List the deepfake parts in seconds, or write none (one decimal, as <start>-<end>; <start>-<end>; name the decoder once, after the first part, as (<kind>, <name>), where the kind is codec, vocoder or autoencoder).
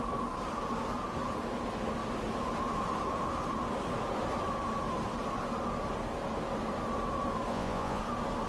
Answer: 7.5-8.0 (vocoder, Vocos)